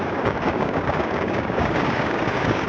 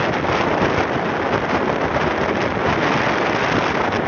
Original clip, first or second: second